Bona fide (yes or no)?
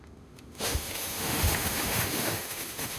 no